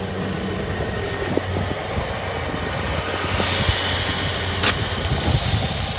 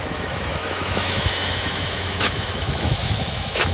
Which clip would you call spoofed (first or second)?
second